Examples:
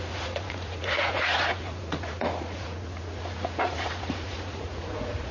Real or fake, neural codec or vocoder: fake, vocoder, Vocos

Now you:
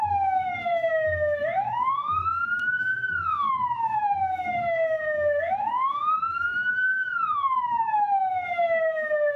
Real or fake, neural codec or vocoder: fake, autoencoder, DAC-VAE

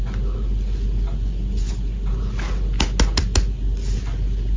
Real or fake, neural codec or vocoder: real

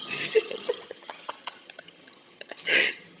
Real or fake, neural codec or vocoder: fake, vocoder, HiFi-GAN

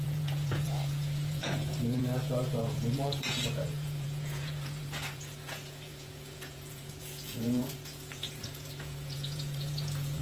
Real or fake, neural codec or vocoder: fake, vocoder, Vocos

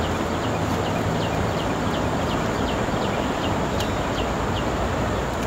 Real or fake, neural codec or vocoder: real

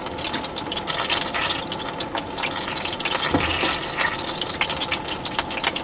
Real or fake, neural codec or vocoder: real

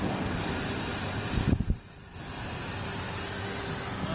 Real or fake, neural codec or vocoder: real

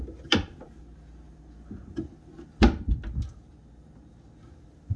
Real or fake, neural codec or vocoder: real